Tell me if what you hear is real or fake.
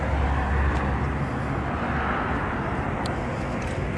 real